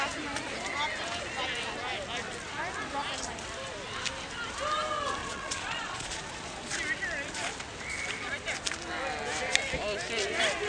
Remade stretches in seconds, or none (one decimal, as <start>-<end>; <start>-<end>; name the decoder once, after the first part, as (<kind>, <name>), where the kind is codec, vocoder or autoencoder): 5.2-6.2 (vocoder, Vocos)